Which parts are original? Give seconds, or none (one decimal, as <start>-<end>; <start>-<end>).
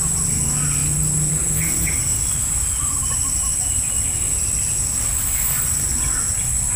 0.0-6.8